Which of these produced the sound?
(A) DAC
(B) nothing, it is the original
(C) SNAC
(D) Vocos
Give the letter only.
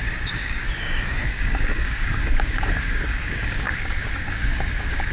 A